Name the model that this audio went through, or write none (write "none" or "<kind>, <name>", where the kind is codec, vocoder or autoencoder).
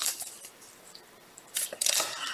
vocoder, BigVGAN v2